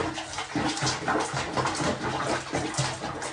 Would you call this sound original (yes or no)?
yes